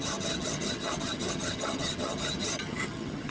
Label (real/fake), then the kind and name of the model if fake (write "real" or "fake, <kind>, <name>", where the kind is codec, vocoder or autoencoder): fake, vocoder, HiFi-GAN